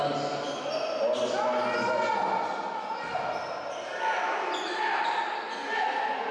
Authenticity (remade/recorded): recorded